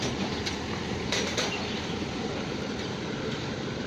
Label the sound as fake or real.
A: fake